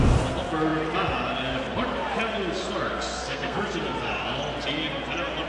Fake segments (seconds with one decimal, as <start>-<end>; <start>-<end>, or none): 2.9-3.6